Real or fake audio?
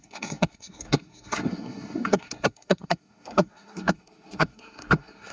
fake